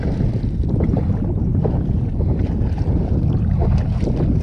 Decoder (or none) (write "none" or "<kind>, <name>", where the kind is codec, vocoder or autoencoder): none